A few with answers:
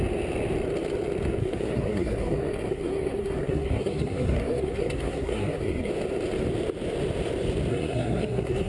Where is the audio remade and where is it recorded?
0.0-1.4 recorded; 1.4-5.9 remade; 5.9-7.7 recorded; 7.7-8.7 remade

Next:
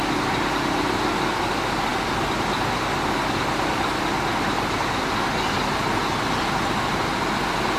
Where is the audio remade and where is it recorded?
0.0-7.8 recorded

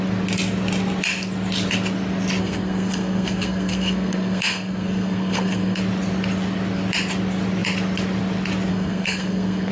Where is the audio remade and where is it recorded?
0.0-2.4 recorded; 2.4-5.8 remade; 5.8-8.7 recorded; 8.7-9.7 remade

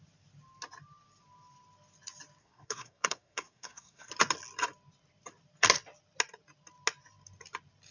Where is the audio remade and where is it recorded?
0.0-2.4 recorded; 2.4-4.1 remade; 4.1-7.9 recorded

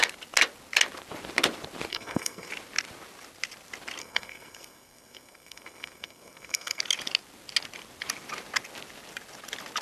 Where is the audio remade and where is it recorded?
0.0-1.9 recorded; 1.9-2.5 remade; 2.5-4.0 recorded; 4.0-6.8 remade; 6.8-9.8 recorded

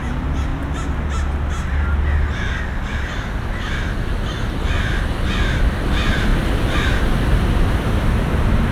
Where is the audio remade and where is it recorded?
0.0-8.7 recorded